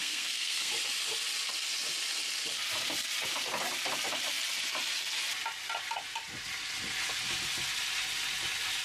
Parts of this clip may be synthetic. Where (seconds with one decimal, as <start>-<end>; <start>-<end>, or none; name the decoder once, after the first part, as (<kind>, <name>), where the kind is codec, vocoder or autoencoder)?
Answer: 0.0-0.7 (codec, SNAC)